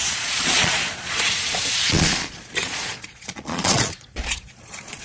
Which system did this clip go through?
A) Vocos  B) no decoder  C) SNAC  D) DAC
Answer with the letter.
A